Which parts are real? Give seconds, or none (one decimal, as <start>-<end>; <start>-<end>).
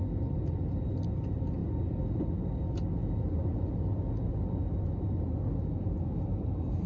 0.0-6.9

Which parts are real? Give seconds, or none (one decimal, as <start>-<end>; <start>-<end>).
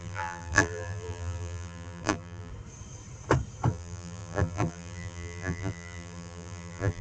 2.5-3.7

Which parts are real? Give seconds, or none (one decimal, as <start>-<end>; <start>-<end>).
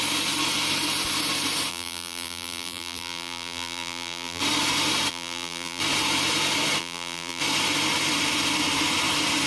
0.0-1.7; 4.4-5.1; 5.8-6.8; 7.4-9.5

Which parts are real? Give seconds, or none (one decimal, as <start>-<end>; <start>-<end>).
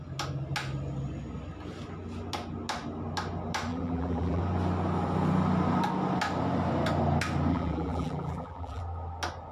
0.0-3.7; 4.4-7.5; 8.8-9.5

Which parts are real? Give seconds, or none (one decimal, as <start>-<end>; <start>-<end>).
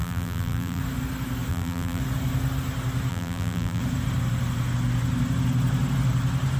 0.8-1.5; 2.0-3.1; 3.8-6.6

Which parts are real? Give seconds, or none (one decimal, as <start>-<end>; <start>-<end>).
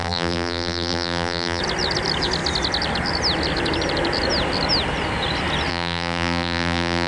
1.6-5.7